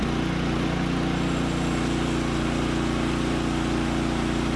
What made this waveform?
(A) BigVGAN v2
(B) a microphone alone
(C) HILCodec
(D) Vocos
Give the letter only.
B